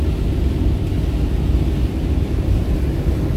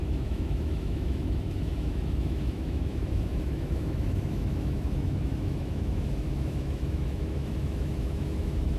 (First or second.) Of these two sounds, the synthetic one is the second